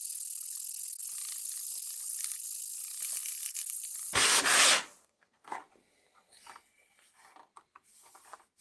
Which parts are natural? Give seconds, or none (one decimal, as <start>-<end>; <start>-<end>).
0.0-5.0; 5.6-8.6